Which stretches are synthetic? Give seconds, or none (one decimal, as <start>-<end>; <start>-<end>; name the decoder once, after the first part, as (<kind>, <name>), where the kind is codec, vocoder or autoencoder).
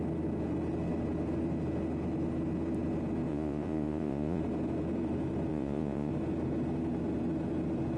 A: 3.3-4.4 (vocoder, Vocos); 5.5-6.1